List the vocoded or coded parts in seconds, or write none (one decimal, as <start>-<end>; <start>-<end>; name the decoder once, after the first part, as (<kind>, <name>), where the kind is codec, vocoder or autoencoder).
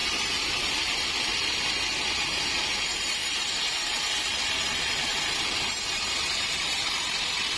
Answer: 0.0-1.6 (vocoder, BigVGAN v2); 3.2-7.6